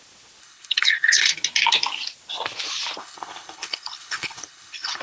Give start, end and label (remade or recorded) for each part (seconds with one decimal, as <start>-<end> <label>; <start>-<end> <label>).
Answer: 0.0-0.4 recorded; 0.4-1.3 remade; 1.3-3.0 recorded; 3.0-5.0 remade